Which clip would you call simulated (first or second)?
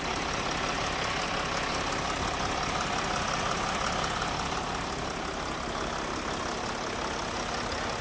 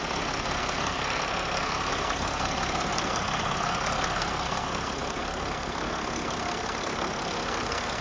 second